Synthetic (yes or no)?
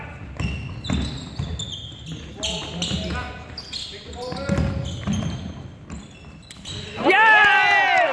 no